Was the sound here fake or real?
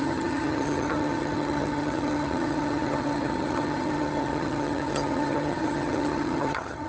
fake